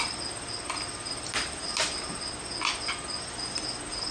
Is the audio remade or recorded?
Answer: recorded